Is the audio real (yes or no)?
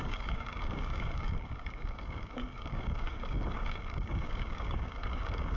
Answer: no